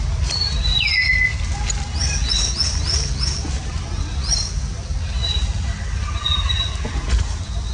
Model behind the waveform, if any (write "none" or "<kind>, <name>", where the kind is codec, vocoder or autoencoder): none